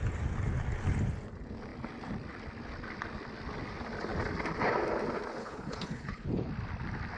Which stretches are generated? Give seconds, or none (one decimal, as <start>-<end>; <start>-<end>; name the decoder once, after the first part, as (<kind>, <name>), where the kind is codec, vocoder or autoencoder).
5.4-6.5 (codec, HILCodec)